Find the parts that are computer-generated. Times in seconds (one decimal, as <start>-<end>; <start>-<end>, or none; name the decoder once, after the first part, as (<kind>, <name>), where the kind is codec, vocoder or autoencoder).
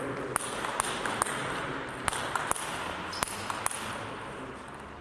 none